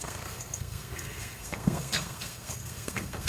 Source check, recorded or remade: remade